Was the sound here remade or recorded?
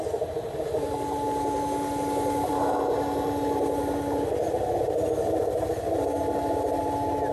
recorded